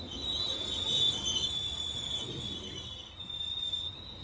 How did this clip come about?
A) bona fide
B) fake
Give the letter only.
A